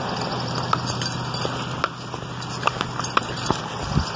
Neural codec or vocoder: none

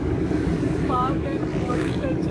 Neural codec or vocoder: codec, DAC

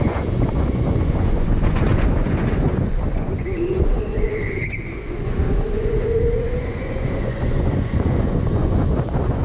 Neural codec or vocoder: vocoder, Vocos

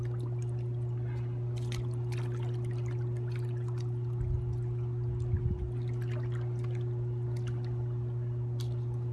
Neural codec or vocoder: none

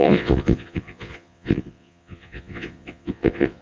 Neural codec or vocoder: vocoder, Vocos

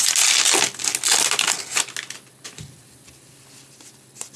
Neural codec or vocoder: none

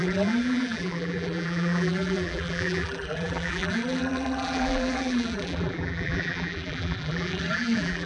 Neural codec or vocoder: vocoder, BigVGAN v2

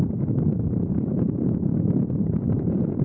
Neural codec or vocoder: vocoder, BigVGAN v2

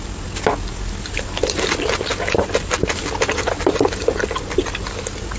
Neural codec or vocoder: none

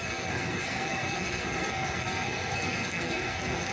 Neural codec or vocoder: codec, SNAC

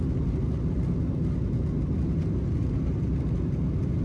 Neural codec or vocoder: none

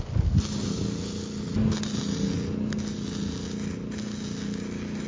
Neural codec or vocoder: none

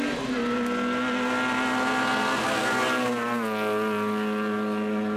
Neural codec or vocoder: none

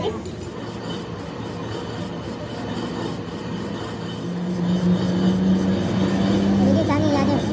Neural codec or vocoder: none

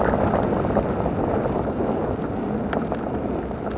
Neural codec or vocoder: none